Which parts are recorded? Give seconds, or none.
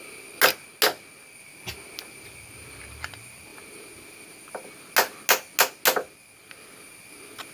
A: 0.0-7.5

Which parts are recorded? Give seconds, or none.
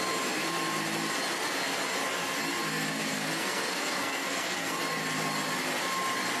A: 0.0-2.7; 4.8-6.4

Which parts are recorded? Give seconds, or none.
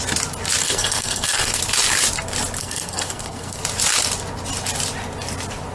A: 0.0-0.6; 1.6-2.6; 3.6-5.7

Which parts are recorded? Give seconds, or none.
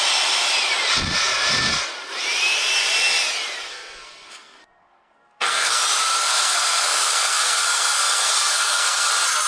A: 0.0-3.7; 5.8-6.2; 9.1-9.5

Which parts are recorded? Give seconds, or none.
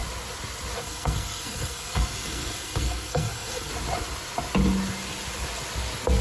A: 0.0-0.8; 3.7-6.2